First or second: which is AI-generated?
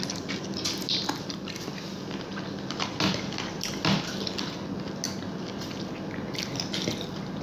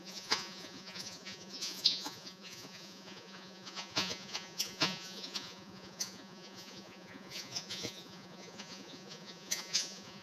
second